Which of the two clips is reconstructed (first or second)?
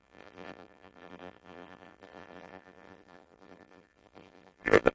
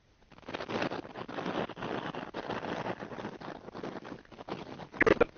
first